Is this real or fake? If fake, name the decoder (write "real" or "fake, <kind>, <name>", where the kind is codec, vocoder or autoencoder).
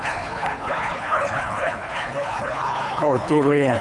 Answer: fake, codec, HILCodec